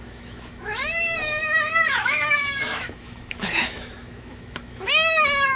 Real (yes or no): no